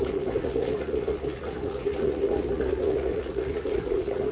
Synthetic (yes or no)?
yes